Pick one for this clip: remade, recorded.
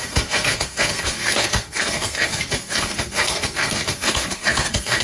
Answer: remade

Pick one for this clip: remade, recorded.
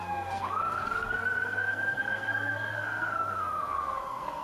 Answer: remade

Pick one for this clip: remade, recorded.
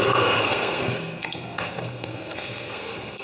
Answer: remade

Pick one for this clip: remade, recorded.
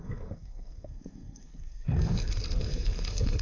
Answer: remade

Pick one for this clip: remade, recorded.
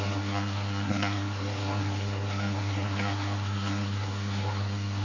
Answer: remade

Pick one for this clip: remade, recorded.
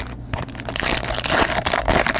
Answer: recorded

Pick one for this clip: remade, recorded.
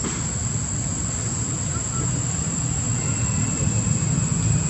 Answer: recorded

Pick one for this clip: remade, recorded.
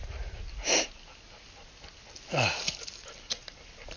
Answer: recorded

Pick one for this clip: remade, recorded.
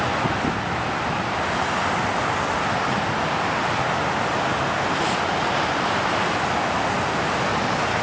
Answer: recorded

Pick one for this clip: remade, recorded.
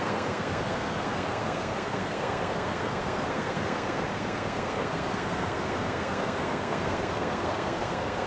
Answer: remade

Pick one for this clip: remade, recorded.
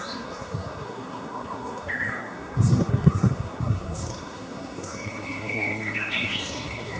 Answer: remade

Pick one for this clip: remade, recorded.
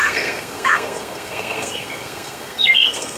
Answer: remade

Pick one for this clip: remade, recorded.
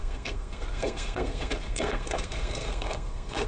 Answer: remade